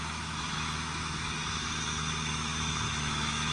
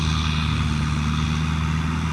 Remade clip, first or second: first